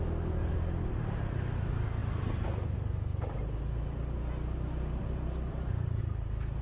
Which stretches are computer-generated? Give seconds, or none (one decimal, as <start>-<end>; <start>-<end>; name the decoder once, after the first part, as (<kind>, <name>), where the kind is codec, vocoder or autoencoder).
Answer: none